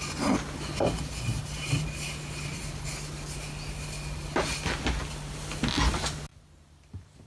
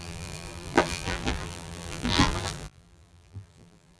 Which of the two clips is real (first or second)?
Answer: first